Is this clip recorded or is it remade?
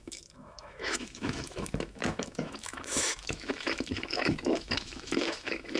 remade